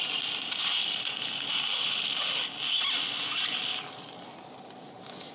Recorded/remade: recorded